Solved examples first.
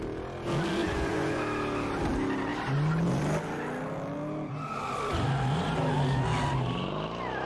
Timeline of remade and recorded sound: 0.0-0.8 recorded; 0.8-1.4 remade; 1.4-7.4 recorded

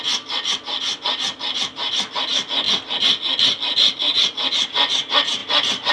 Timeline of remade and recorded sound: 0.0-5.9 recorded